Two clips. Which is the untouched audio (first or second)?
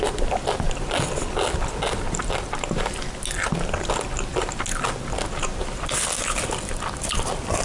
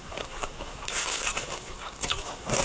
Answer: first